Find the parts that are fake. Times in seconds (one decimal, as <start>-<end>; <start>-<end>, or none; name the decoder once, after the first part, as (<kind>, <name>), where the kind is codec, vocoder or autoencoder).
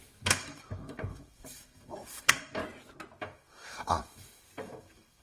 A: 0.0-2.6 (autoencoder, DAC-VAE); 3.2-5.2